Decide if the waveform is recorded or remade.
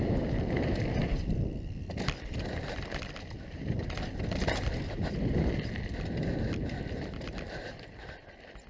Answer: remade